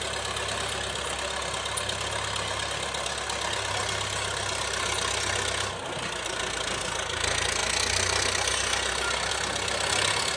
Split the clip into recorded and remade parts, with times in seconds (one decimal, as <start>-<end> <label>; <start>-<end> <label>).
0.0-10.4 recorded

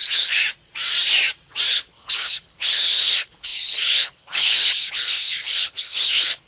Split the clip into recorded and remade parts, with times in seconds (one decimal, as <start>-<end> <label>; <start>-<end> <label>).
0.0-0.4 remade; 0.4-1.7 recorded; 1.7-6.5 remade

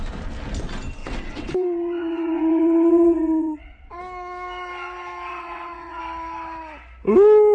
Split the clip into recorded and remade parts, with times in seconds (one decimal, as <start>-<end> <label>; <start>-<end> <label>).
0.0-1.0 recorded; 1.0-4.0 remade; 4.0-5.3 recorded; 5.3-6.0 remade; 6.0-7.5 recorded

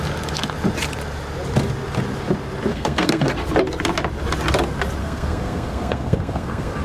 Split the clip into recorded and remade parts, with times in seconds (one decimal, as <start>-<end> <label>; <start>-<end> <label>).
0.0-2.7 recorded; 2.7-3.3 remade; 3.3-5.0 recorded; 5.0-6.8 remade

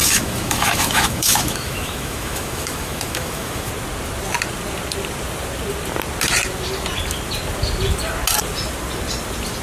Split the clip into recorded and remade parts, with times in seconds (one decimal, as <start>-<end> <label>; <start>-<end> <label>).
0.0-3.7 remade; 3.7-9.6 recorded

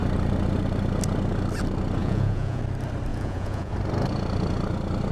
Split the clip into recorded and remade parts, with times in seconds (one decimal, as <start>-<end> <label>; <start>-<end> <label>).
0.0-2.0 recorded; 2.0-2.6 remade; 2.6-3.1 recorded; 3.1-3.7 remade; 3.7-5.1 recorded

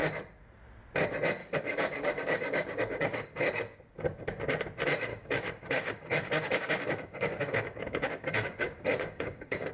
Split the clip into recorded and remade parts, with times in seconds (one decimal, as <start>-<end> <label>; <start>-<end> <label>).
0.0-1.4 recorded; 1.4-3.4 remade; 3.4-5.1 recorded; 5.1-9.7 remade